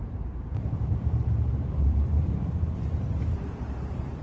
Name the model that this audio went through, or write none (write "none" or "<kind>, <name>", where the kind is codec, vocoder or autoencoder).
vocoder, BigVGAN v2